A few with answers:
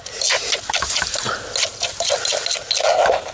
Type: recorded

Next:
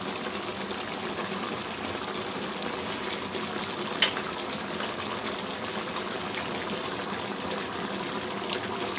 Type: recorded